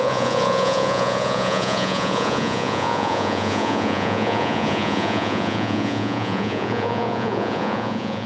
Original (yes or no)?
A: no